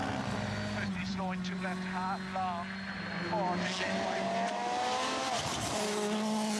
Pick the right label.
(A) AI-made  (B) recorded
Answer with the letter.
B